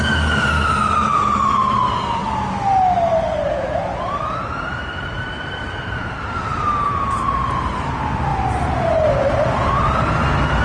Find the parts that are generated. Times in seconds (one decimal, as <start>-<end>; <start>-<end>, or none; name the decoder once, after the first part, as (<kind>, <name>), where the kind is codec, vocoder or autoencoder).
3.9-7.7 (vocoder, BigVGAN v2); 8.3-8.9